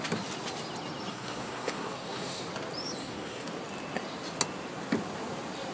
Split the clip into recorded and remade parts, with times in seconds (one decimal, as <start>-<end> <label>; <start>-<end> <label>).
0.0-1.1 recorded; 1.1-2.4 remade; 2.4-3.0 recorded; 3.0-3.5 remade; 3.5-5.7 recorded

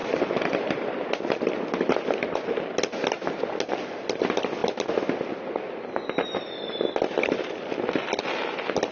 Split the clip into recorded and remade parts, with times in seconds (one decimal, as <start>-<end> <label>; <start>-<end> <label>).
0.0-3.3 remade; 3.3-4.6 recorded; 4.6-8.2 remade; 8.2-8.9 recorded

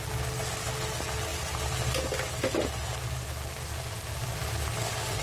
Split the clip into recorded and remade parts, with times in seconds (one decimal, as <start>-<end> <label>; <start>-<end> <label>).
0.0-5.2 recorded

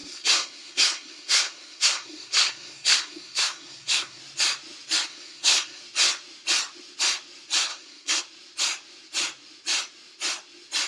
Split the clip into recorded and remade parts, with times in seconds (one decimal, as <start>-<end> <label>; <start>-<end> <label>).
0.0-4.2 remade; 4.2-5.1 recorded; 5.1-5.8 remade; 5.8-7.7 recorded; 7.7-8.2 remade; 8.2-10.9 recorded

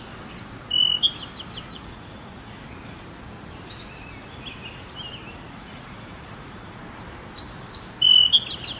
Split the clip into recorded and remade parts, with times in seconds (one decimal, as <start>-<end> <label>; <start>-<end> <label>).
0.0-1.7 recorded; 1.7-2.6 remade; 2.6-5.2 recorded; 5.2-6.8 remade; 6.8-8.8 recorded

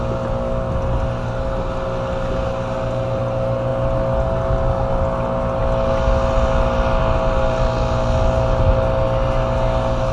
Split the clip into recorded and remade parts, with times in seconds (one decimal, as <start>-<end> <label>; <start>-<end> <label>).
0.0-10.1 recorded